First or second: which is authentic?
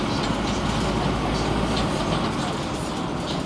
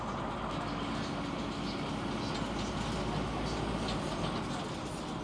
second